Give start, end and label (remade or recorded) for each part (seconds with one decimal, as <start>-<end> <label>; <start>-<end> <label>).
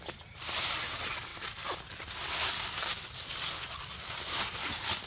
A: 0.0-5.1 recorded